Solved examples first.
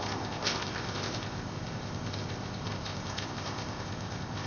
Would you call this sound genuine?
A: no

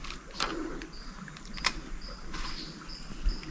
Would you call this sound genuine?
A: yes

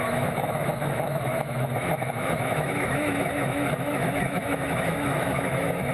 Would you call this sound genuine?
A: no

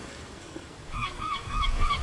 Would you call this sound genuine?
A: no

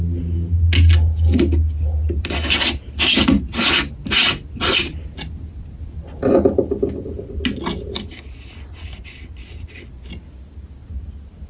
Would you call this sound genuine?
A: yes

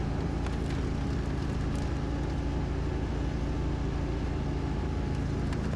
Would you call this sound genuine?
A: yes